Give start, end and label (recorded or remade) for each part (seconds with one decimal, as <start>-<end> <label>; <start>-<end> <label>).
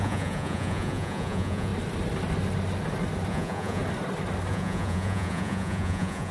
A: 0.0-1.7 remade; 1.7-3.3 recorded; 3.3-3.8 remade; 3.8-4.5 recorded; 4.5-6.3 remade